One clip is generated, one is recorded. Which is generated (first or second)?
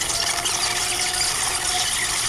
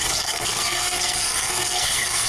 second